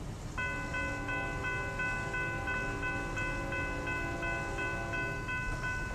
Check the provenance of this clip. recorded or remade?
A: recorded